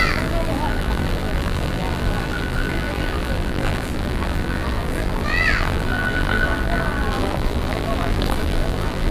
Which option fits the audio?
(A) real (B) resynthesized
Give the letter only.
B